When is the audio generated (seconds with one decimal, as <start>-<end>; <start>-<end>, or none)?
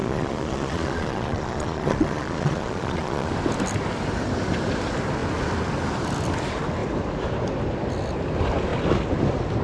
0.0-3.3